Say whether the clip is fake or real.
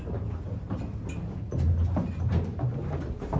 real